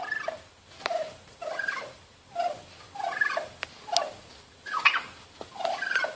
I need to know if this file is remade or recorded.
recorded